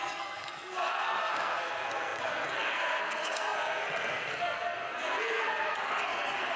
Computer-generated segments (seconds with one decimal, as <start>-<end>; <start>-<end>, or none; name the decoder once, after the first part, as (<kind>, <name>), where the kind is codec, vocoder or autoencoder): 0.0-6.6 (codec, SNAC)